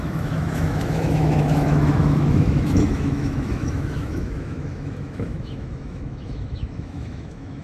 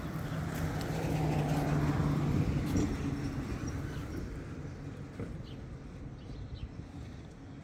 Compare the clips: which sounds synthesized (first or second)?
first